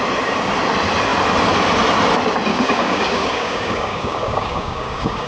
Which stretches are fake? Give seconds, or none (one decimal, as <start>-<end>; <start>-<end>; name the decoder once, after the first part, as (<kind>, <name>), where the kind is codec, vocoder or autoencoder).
2.5-5.3 (codec, DAC)